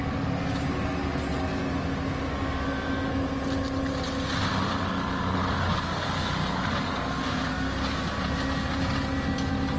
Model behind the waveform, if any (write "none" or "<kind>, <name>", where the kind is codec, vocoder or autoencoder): none